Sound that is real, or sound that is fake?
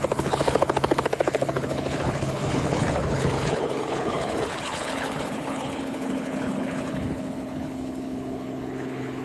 fake